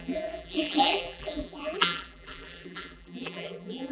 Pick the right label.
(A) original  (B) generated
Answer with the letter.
B